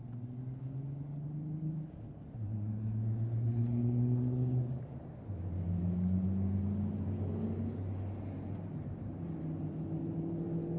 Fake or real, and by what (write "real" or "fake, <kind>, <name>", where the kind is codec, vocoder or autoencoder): real